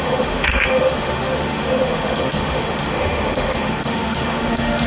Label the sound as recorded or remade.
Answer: remade